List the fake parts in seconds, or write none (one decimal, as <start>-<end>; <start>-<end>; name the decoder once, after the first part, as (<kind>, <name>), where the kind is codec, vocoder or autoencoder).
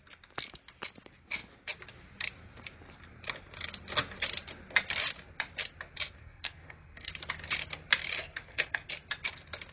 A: 6.2-7.1 (codec, SNAC); 8.1-8.9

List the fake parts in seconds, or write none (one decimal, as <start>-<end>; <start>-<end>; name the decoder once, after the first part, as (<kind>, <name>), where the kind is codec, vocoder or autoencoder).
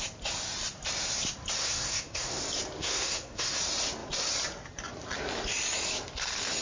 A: 1.6-2.4 (codec, SNAC); 2.8-3.6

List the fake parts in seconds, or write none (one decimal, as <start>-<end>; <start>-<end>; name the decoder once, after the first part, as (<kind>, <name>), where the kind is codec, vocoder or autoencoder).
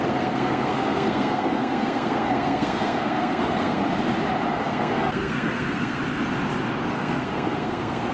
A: 0.0-3.8 (codec, SNAC); 4.6-6.0; 6.9-8.1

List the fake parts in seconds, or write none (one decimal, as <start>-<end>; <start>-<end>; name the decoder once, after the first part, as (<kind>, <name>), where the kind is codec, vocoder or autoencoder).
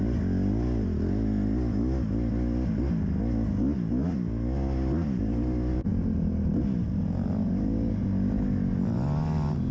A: none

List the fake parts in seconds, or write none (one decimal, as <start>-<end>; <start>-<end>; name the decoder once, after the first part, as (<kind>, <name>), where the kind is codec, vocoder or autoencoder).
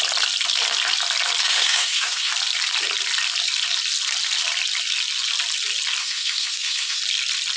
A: 1.4-2.3 (codec, SNAC); 6.0-7.0